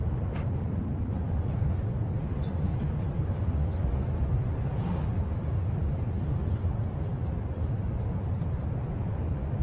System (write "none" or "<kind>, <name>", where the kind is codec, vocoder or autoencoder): none